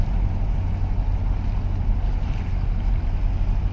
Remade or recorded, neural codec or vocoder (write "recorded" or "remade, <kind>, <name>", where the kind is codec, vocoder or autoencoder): recorded